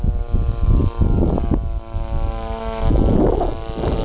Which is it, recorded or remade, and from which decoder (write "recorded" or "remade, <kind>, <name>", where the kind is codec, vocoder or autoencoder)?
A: recorded